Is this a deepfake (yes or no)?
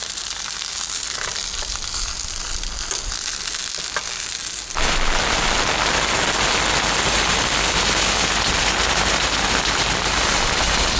no